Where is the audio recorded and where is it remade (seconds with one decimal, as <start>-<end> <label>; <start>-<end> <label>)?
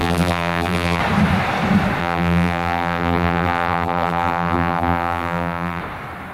0.0-1.0 remade; 1.0-2.0 recorded; 2.0-5.8 remade; 5.8-6.3 recorded